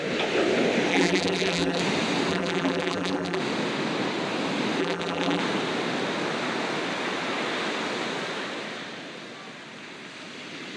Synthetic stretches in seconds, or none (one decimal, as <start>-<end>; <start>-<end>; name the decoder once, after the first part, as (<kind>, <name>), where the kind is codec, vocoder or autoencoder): 0.9-1.8 (vocoder, BigVGAN v2); 2.3-3.4; 4.8-5.4